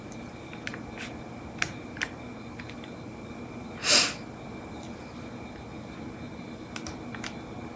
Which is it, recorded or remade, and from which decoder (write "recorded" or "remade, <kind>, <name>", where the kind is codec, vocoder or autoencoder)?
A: recorded